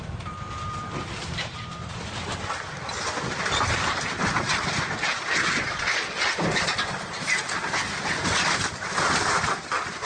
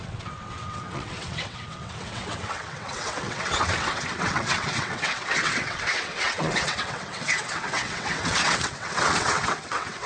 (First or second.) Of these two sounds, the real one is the first